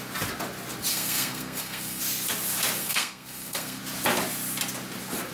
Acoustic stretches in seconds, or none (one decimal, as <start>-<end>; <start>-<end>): 0.0-0.9; 2.0-2.8; 3.8-5.3